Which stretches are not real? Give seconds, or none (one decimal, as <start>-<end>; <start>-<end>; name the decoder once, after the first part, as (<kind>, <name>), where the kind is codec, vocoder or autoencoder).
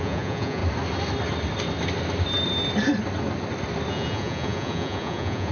0.0-0.6 (vocoder, Vocos); 3.9-5.5